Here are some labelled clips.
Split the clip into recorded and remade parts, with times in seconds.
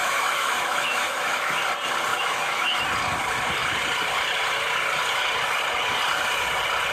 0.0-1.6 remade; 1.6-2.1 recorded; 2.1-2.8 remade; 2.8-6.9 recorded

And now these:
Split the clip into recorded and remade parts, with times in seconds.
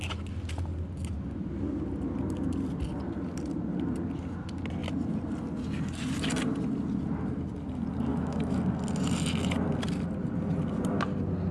0.0-8.1 recorded; 8.1-8.6 remade; 8.6-11.5 recorded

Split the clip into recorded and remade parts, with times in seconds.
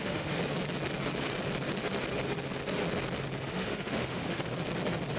0.0-0.4 remade; 0.4-3.5 recorded; 3.5-4.5 remade; 4.5-5.2 recorded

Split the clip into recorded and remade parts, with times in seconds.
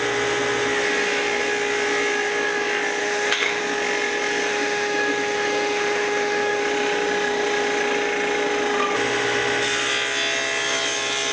0.0-3.0 recorded; 3.0-3.6 remade; 3.6-4.5 recorded; 4.5-6.6 remade; 6.6-11.3 recorded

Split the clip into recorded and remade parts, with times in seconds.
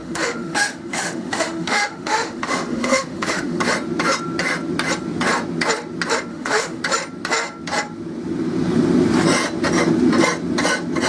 0.0-3.6 remade; 3.6-6.3 recorded; 6.3-6.8 remade; 6.8-11.1 recorded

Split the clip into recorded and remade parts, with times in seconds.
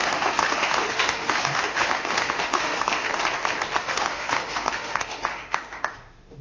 0.0-3.1 remade; 3.1-3.8 recorded; 3.8-6.4 remade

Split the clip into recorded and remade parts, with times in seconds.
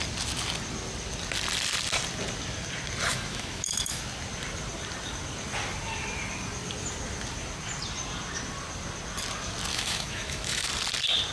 0.0-3.1 recorded; 3.1-4.0 remade; 4.0-9.7 recorded; 9.7-10.7 remade; 10.7-11.3 recorded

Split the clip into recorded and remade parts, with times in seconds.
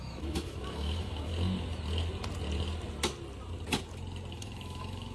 0.0-1.3 remade; 1.3-4.3 recorded; 4.3-5.1 remade